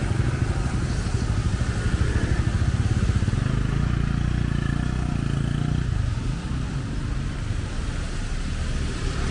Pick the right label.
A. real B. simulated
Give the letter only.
A